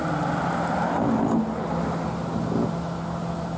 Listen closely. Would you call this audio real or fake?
real